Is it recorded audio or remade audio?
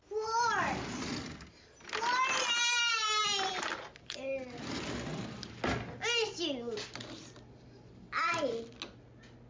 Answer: recorded